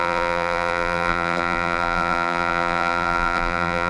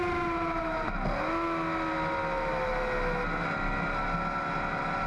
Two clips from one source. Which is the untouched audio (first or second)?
second